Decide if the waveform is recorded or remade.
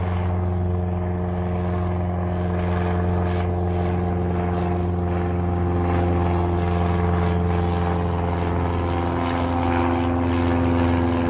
recorded